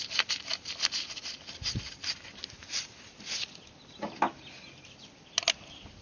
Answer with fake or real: real